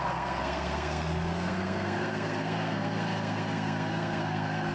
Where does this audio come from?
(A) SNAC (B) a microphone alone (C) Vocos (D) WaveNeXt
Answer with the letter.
A